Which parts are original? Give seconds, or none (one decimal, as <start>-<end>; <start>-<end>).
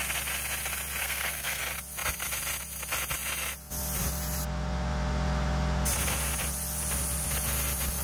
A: 0.0-1.0; 1.6-8.0